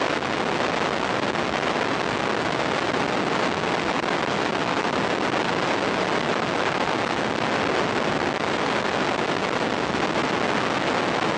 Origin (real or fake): real